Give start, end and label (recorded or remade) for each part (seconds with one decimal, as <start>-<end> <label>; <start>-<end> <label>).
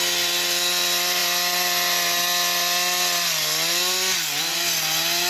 0.0-5.3 recorded